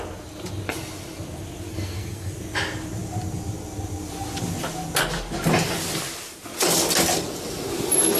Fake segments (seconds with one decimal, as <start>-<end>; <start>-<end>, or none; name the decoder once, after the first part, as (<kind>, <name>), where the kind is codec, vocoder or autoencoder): 1.7-2.4 (codec, SNAC)